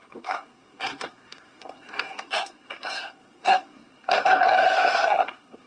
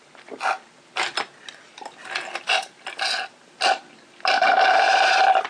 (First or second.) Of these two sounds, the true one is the second